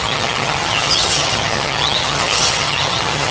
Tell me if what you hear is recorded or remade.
remade